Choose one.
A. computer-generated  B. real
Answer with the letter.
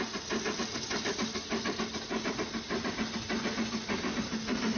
B